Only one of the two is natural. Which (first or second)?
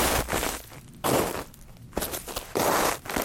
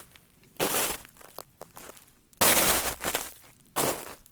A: first